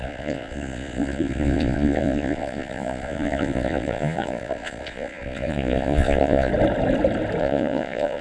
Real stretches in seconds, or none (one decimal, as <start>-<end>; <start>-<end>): 6.5-7.4